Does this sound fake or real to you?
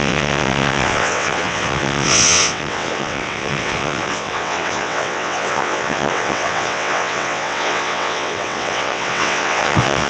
fake